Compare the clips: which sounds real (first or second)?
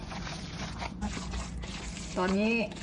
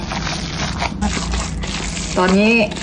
second